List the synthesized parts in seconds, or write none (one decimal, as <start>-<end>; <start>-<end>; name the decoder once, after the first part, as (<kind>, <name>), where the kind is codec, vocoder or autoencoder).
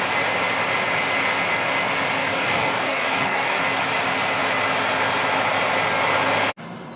2.2-3.6 (codec, DAC)